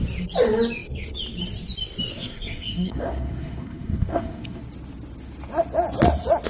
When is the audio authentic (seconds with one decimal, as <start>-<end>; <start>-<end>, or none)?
0.0-2.1; 4.6-6.5